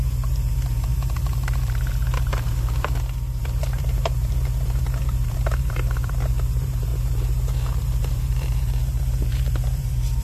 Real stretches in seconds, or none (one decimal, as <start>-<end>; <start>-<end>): none